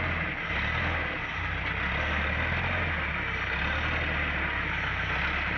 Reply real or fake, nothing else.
real